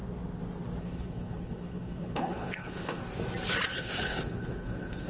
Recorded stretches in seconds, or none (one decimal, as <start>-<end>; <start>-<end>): 0.0-0.8; 3.0-3.7